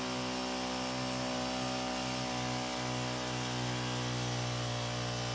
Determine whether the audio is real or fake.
real